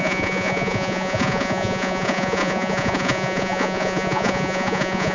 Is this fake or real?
fake